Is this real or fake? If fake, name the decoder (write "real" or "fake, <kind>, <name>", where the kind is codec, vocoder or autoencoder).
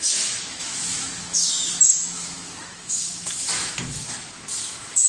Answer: fake, autoencoder, DAC-VAE